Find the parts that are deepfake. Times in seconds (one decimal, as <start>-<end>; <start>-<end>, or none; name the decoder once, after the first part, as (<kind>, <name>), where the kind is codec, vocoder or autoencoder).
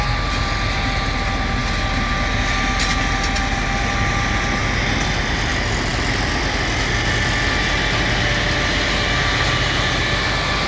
none